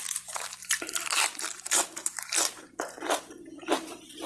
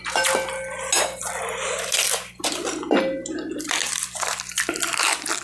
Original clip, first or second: second